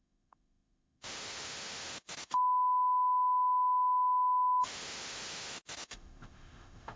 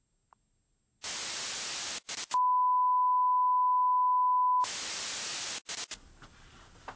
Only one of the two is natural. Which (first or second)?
second